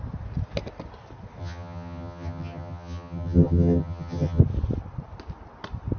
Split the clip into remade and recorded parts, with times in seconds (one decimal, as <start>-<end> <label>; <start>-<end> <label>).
0.0-1.4 recorded; 1.4-4.4 remade; 4.4-6.0 recorded